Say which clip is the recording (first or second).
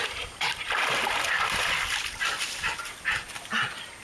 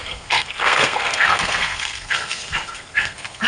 first